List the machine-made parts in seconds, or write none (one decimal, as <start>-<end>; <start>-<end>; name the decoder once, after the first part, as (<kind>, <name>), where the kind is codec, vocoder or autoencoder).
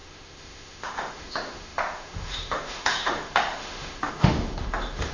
0.0-5.1 (autoencoder, DAC-VAE)